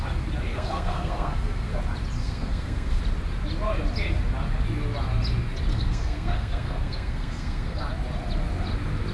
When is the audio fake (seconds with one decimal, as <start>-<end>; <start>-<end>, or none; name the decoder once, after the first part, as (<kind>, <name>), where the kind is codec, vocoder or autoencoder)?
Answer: 0.5-1.8 (codec, SNAC); 2.2-3.0; 5.7-7.8